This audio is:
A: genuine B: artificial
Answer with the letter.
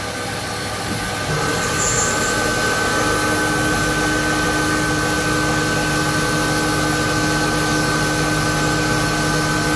A